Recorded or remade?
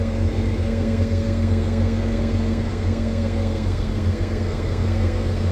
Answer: remade